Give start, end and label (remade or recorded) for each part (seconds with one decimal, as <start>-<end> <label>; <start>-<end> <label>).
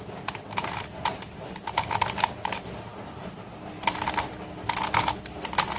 0.0-5.8 recorded